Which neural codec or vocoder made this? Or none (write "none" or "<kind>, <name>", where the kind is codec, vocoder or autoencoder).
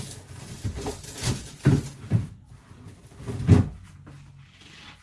none